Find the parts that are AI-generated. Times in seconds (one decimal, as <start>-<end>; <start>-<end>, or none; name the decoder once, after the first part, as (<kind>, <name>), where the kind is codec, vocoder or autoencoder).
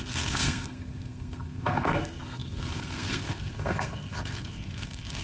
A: 0.0-5.2 (codec, SNAC)